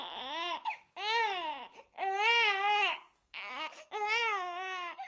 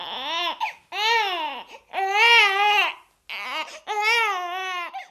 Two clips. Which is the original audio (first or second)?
second